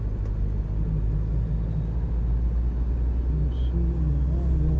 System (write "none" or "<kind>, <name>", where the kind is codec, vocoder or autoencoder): none